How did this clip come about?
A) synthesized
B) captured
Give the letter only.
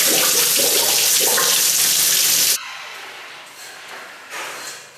B